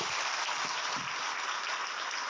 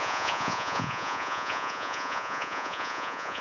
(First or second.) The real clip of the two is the first